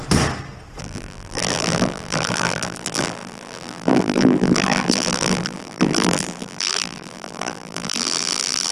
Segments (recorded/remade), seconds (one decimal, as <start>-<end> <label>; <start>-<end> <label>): 0.0-0.8 recorded; 0.8-8.7 remade